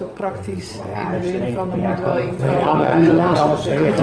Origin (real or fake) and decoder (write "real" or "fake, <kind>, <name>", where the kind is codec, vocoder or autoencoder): fake, vocoder, WaveNeXt